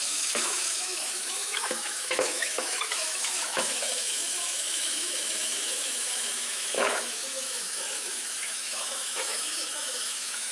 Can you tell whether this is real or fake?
fake